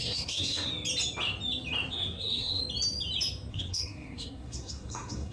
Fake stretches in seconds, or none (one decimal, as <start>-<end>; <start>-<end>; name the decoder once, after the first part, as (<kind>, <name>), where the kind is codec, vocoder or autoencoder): 0.0-0.7 (codec, SNAC); 1.9-2.6; 3.5-5.3